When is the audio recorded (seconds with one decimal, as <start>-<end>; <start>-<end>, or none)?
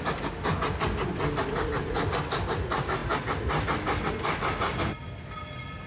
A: 0.0-5.9